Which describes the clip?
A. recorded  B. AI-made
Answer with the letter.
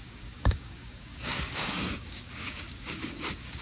B